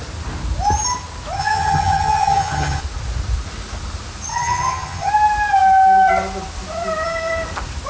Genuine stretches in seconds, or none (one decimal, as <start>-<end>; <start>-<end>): 0.0-1.4; 2.8-4.3; 5.1-7.9

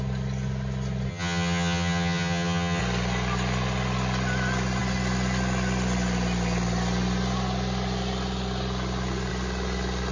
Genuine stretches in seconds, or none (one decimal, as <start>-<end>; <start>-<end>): 0.0-1.1; 2.8-10.1

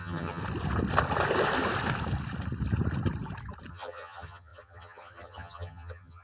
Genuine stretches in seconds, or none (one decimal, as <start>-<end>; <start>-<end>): 0.4-3.7

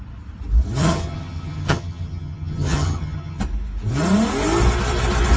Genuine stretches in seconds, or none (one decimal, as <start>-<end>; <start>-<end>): 0.0-0.8; 3.4-5.4

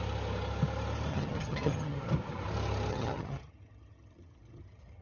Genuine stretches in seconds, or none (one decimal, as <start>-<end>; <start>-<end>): 0.0-1.1; 2.1-2.9

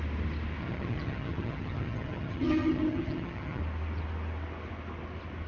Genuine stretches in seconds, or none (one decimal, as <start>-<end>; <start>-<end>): 0.0-0.6; 3.6-5.5

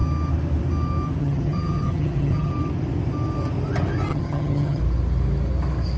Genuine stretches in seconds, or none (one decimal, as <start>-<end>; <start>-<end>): 0.0-1.2; 2.5-4.1; 4.8-6.0

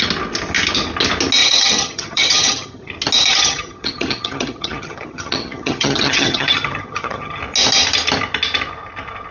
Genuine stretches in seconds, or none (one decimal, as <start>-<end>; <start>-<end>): 0.0-1.4; 2.9-3.3; 7.4-9.3